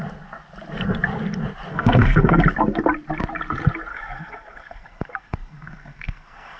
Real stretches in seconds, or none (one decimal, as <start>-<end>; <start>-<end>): 0.0-1.7; 2.4-3.9